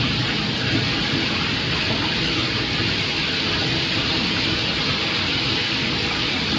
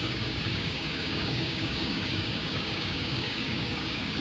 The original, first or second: first